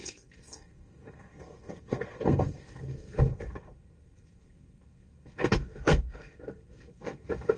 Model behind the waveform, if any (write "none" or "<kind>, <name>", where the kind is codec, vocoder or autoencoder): codec, SNAC